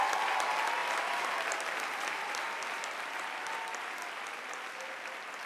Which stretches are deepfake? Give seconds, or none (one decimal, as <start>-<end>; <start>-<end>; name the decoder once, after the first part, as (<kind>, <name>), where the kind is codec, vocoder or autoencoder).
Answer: 0.8-4.1 (vocoder, BigVGAN v2)